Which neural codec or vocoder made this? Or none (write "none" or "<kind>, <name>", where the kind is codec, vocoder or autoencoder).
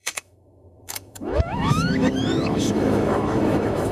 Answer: autoencoder, DAC-VAE